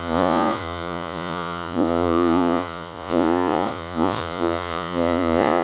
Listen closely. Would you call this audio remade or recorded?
remade